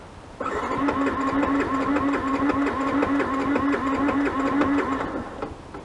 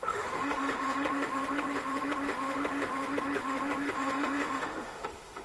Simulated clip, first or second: second